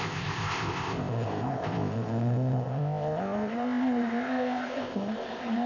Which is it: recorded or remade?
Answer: remade